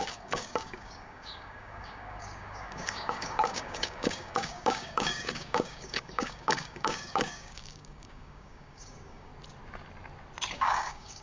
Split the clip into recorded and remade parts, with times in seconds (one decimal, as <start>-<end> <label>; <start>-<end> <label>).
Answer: 0.0-9.3 remade; 9.3-10.5 recorded; 10.5-11.2 remade